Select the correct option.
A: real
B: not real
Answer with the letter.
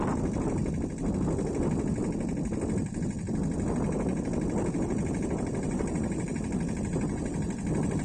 A